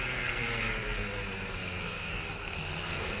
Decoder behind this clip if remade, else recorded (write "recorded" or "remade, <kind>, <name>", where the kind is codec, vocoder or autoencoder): remade, codec, SNAC